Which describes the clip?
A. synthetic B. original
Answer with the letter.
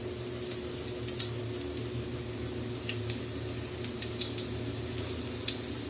B